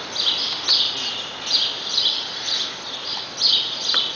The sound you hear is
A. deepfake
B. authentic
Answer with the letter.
B